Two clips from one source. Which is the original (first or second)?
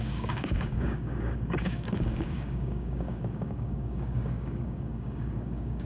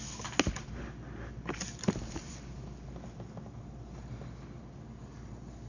second